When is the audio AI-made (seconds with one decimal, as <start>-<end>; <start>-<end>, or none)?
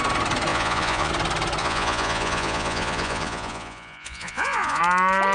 0.5-1.1; 1.6-4.8